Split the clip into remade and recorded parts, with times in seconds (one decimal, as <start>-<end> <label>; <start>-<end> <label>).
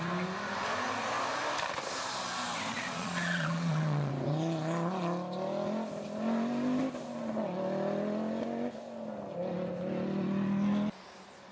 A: 0.0-2.7 recorded; 2.7-4.1 remade; 4.1-11.5 recorded